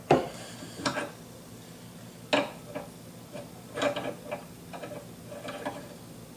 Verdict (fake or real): real